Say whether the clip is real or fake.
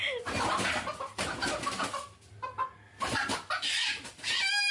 real